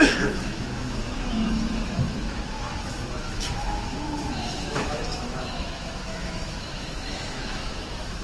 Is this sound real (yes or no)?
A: no